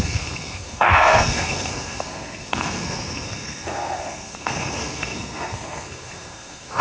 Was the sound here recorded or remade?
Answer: remade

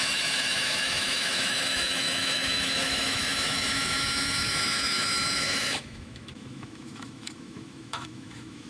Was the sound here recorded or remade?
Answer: remade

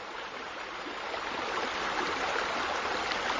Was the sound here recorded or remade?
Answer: recorded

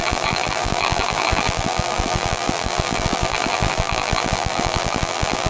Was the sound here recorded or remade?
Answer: remade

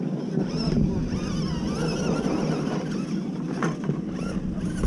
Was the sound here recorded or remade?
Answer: recorded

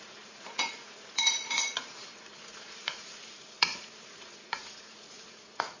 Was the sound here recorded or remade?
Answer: remade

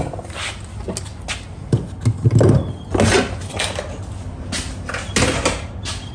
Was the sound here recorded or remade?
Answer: recorded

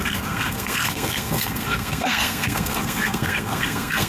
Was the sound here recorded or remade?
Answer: remade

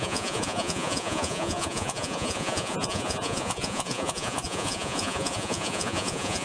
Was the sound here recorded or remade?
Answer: remade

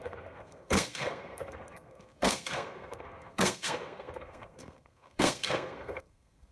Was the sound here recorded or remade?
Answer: remade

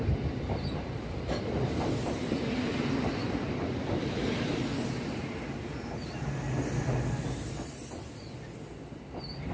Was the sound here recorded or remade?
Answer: recorded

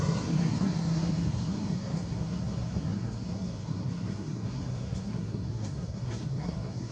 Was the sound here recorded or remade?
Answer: remade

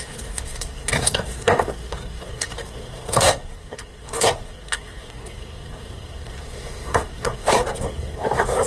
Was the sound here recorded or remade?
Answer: remade